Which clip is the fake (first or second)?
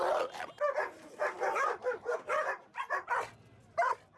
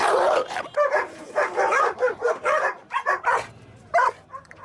second